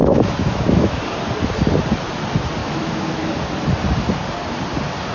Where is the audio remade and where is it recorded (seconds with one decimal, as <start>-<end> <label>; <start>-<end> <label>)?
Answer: 0.0-1.0 remade; 1.0-2.6 recorded; 2.6-3.3 remade; 3.3-5.1 recorded